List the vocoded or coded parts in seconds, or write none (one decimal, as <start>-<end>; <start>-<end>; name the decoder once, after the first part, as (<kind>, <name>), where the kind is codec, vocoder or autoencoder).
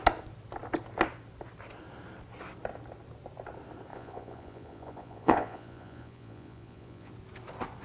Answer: 3.9-7.1 (vocoder, Vocos)